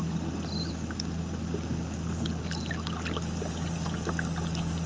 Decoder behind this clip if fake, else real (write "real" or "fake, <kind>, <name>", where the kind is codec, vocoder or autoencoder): real